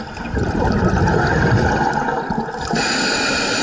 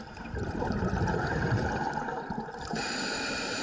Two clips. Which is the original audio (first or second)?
first